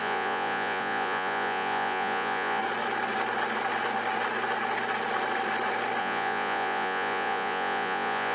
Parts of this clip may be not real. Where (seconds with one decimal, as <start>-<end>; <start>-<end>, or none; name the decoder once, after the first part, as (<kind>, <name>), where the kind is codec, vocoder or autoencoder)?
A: 0.0-2.6 (vocoder, Vocos); 6.0-8.3